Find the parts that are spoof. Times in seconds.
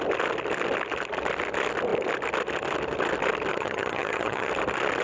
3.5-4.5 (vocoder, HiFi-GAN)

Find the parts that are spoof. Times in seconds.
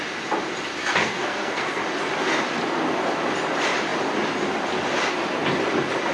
0.8-1.8 (codec, SNAC)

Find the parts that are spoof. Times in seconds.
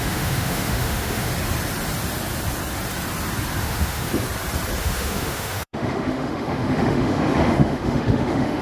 0.0-1.3 (autoencoder, DAC-VAE); 3.6-4.1; 4.8-8.6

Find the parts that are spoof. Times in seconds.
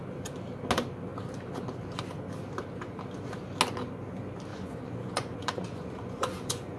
4.5-6.8 (vocoder, Vocos)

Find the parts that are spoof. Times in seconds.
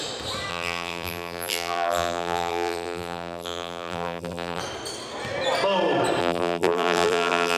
0.5-4.6 (vocoder, BigVGAN v2); 6.2-7.6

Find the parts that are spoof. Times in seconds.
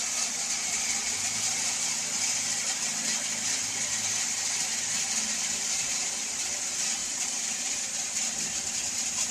4.7-6.1 (vocoder, BigVGAN v2); 7.0-9.3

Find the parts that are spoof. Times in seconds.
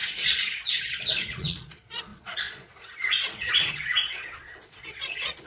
0.0-5.5 (vocoder, Vocos)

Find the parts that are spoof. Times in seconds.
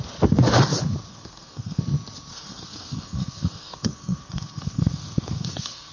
1.1-1.8 (codec, SNAC); 2.3-5.9